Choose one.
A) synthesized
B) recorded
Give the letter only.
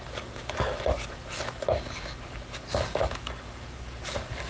A